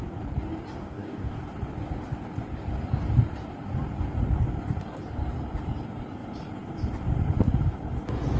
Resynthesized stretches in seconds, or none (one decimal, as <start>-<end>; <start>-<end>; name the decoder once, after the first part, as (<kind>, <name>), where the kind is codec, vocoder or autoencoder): 0.8-1.4 (codec, DAC)

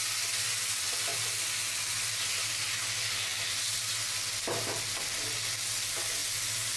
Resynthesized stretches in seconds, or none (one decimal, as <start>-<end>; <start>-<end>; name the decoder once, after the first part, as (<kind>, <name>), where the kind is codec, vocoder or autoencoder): none

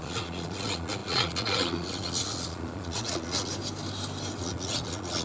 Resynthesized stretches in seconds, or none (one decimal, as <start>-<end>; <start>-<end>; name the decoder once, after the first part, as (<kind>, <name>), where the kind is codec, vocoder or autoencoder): 0.0-3.5 (vocoder, Vocos); 4.4-5.2

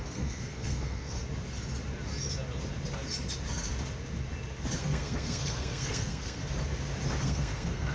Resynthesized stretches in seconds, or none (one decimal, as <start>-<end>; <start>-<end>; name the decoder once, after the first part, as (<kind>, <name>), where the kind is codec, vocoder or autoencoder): 0.0-1.2 (codec, SNAC); 4.8-6.4; 7.2-7.9

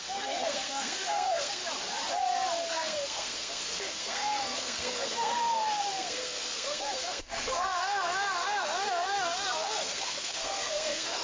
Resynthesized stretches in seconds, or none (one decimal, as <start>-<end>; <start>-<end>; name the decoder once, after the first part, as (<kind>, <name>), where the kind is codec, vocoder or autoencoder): 0.0-1.6 (codec, SNAC); 2.7-11.2

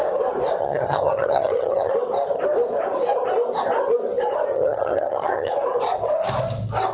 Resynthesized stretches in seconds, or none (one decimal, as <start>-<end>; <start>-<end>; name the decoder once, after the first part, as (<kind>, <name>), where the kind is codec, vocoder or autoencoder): 0.6-1.9 (vocoder, HiFi-GAN); 4.5-5.5

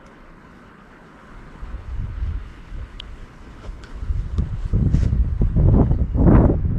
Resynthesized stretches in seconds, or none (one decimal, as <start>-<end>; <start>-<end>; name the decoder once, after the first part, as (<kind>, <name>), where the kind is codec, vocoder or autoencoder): 0.0-6.0 (codec, HILCodec)